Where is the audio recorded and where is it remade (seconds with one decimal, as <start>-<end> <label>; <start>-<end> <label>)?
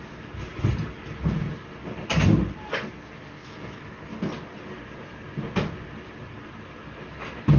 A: 0.0-3.4 recorded; 3.4-4.1 remade; 4.1-7.6 recorded